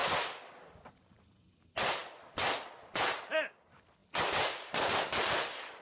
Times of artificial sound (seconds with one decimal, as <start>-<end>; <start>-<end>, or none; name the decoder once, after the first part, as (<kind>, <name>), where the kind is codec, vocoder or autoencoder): none